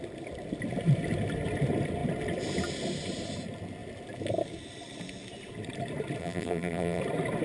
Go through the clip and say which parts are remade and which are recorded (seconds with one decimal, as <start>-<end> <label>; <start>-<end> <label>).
0.0-6.2 recorded; 6.2-7.0 remade; 7.0-7.4 recorded